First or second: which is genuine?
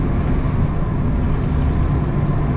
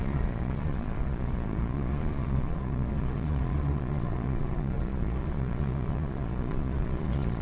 first